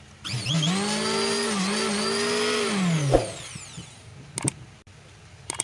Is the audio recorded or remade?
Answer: recorded